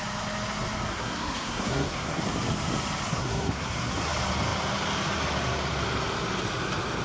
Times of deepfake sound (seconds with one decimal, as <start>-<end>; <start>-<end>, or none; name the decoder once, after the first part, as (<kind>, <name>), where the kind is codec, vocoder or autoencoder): 0.9-2.2 (codec, SNAC); 3.1-4.1